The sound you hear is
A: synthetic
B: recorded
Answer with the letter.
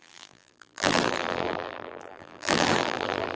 A